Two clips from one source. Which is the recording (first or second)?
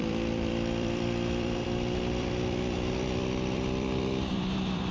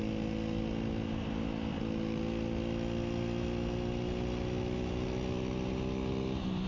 second